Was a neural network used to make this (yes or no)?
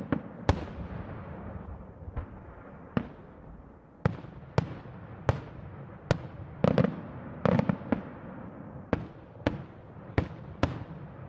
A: no